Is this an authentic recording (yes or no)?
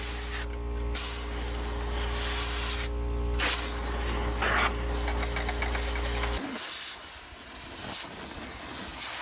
yes